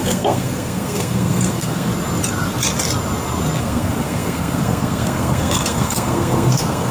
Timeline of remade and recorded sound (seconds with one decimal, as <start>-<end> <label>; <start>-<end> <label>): 0.0-1.9 remade; 1.9-3.6 recorded; 3.6-6.9 remade